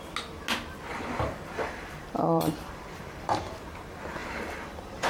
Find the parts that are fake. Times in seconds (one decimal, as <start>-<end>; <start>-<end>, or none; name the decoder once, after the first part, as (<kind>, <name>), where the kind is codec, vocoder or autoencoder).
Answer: 0.9-3.6 (vocoder, BigVGAN v2); 4.2-5.1